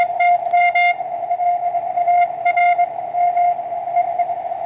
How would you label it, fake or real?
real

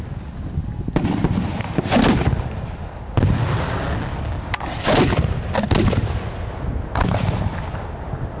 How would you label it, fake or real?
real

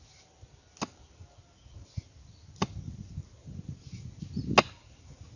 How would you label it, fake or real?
real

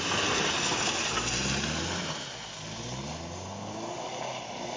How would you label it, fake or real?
real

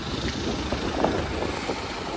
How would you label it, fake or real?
real